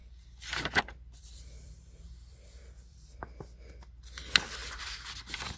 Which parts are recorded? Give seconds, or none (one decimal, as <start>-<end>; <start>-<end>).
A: 0.0-1.3; 3.2-4.6